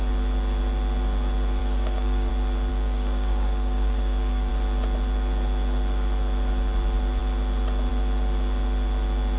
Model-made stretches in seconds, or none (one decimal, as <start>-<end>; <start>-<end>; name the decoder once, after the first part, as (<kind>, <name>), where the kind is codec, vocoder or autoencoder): 1.6-2.3 (codec, DAC); 2.7-4.5